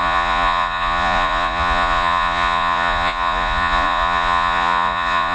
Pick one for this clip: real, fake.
fake